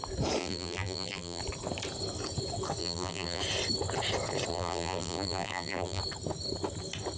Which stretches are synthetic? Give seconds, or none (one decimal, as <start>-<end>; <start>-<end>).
0.4-1.4; 2.8-3.4; 4.5-6.0